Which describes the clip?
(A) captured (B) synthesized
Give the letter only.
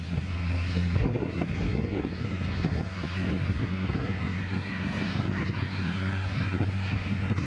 B